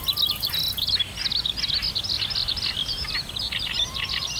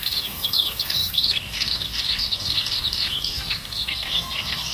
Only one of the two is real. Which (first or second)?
first